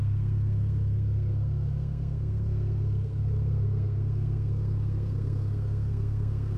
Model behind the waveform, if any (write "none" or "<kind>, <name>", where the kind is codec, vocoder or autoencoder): codec, SNAC